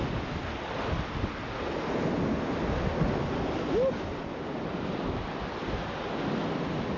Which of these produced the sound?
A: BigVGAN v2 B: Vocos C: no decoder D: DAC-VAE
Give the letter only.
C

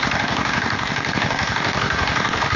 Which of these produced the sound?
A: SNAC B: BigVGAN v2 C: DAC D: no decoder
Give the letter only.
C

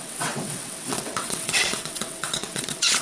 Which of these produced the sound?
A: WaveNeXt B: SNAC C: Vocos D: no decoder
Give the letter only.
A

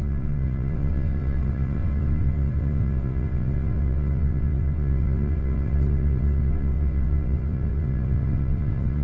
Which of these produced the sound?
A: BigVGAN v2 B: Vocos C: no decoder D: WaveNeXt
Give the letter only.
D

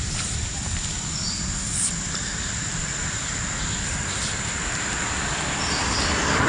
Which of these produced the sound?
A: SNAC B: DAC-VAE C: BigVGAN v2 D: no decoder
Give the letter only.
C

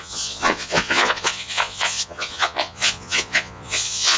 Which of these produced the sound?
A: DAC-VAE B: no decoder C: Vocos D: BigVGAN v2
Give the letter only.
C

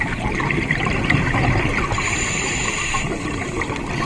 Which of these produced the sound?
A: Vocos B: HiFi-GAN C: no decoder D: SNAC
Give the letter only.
C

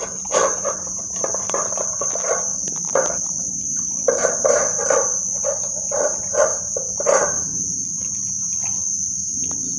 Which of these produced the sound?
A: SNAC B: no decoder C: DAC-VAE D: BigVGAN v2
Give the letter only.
D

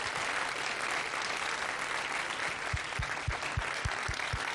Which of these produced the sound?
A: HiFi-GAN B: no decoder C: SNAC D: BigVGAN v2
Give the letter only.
B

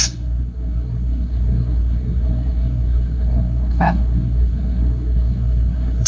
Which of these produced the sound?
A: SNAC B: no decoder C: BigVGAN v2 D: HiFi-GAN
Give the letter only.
A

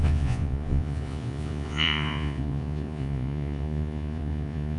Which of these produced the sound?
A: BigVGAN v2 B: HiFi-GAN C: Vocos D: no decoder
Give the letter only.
C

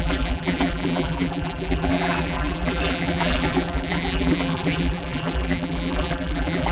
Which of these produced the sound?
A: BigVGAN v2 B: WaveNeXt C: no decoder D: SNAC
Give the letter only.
A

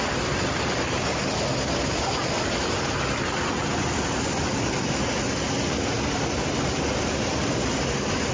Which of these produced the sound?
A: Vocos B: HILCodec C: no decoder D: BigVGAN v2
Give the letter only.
C